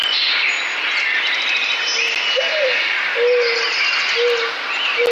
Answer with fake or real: real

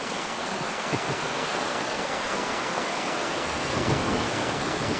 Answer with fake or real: fake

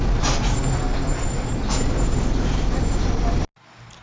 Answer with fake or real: real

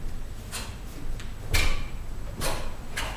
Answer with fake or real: real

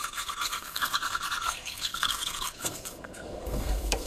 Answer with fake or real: fake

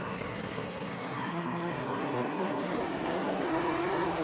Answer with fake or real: fake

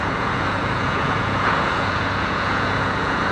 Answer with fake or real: fake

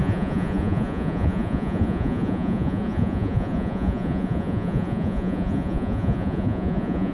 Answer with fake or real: fake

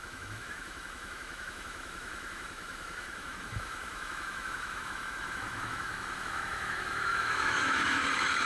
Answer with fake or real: fake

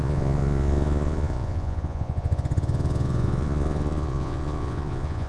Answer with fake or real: fake